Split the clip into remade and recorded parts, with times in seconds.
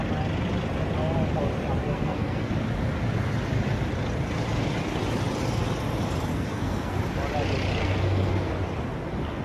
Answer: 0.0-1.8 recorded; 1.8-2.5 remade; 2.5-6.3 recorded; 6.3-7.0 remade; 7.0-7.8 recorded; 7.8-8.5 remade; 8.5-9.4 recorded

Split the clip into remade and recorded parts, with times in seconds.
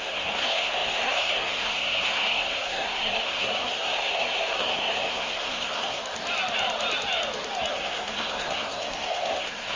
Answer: 0.0-6.0 remade; 6.0-7.7 recorded; 7.7-9.8 remade